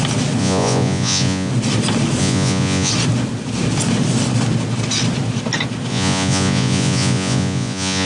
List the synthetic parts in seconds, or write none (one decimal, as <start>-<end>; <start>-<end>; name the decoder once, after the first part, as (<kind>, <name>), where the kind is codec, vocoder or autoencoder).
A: 0.4-1.5 (vocoder, Vocos); 2.2-2.9; 5.9-8.1